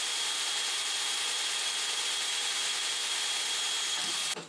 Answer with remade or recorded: recorded